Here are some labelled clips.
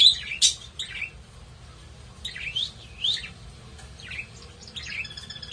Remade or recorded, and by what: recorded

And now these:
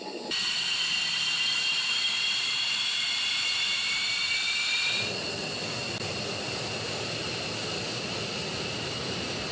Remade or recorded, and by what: recorded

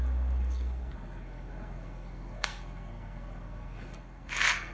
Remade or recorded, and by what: remade, codec, SNAC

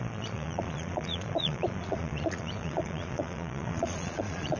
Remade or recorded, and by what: remade, vocoder, Vocos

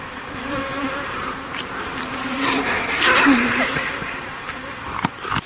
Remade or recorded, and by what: remade, vocoder, BigVGAN v2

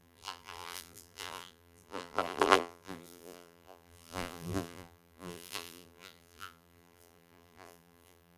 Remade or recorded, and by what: remade, vocoder, BigVGAN v2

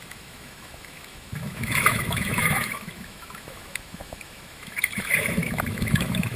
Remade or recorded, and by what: remade, autoencoder, DAC-VAE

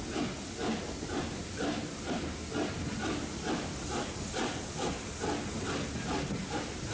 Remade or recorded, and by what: recorded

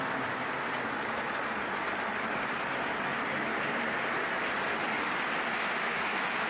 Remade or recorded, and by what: recorded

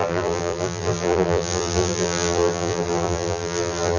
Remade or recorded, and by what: remade, vocoder, BigVGAN v2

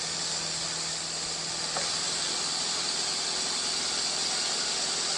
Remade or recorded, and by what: recorded